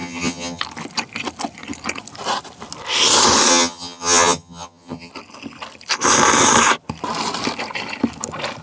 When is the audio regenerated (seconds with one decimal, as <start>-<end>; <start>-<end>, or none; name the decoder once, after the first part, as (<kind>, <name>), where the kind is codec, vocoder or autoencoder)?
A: 0.0-0.6 (vocoder, HiFi-GAN); 3.5-5.1